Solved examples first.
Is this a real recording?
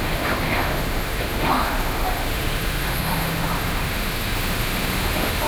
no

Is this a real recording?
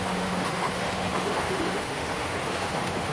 no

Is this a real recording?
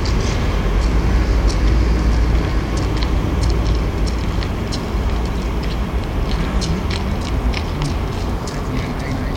yes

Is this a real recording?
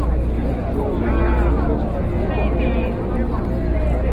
yes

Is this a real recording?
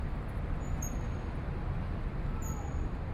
yes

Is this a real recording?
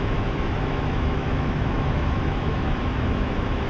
no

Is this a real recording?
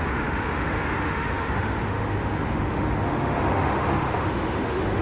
no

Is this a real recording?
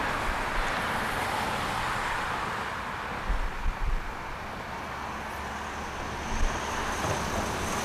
yes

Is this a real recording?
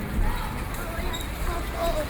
yes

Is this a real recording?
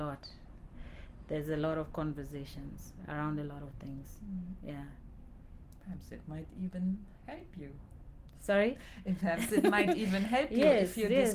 yes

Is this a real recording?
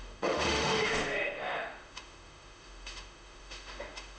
no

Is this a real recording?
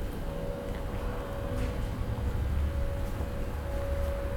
yes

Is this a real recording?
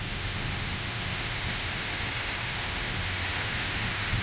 no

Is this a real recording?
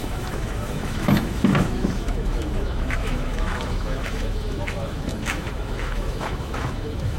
no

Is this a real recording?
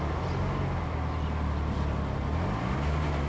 yes